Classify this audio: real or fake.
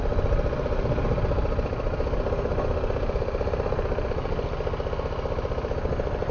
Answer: real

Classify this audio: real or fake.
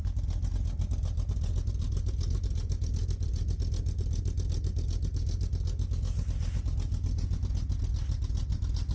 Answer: real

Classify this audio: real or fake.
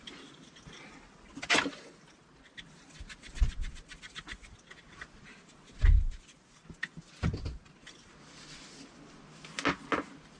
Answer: real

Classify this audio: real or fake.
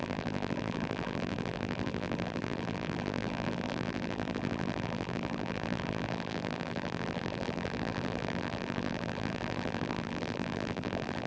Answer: fake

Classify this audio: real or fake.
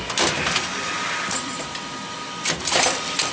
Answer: real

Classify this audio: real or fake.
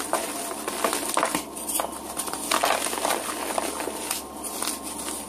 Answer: real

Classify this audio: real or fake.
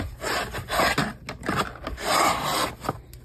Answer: real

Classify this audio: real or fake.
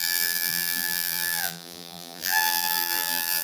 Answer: fake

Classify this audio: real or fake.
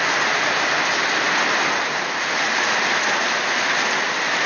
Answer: real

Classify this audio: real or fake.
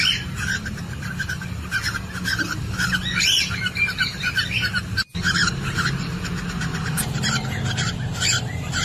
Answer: real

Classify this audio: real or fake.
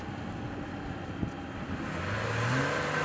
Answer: real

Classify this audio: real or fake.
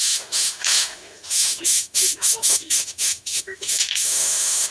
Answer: fake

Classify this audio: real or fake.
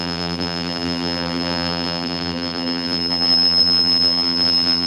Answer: fake